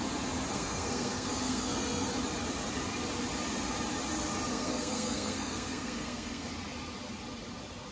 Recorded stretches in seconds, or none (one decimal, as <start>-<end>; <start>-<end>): 0.0-0.5; 2.1-4.5; 6.5-7.9